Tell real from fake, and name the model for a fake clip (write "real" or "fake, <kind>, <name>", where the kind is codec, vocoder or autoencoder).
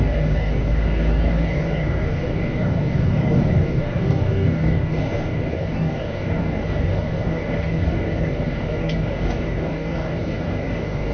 fake, codec, DAC